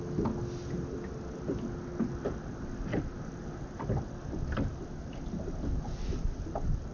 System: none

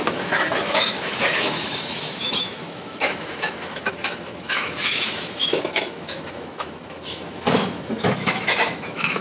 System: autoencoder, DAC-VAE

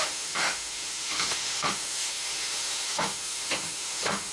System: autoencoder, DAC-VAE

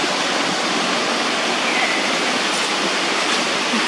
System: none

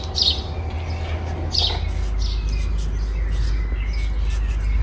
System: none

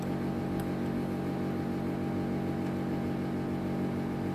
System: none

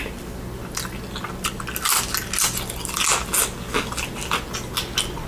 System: none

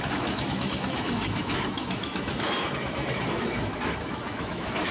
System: autoencoder, DAC-VAE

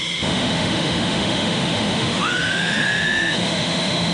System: autoencoder, DAC-VAE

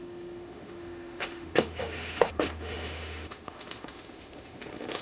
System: autoencoder, DAC-VAE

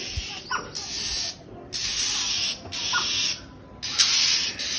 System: none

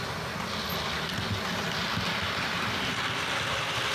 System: none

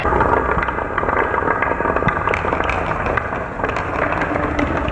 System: none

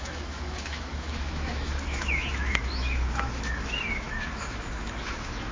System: autoencoder, DAC-VAE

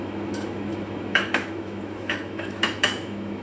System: autoencoder, DAC-VAE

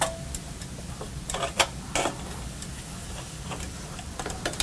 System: none